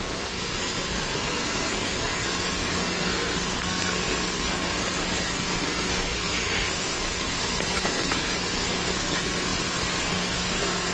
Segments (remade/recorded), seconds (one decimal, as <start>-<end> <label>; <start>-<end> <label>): 0.0-10.9 remade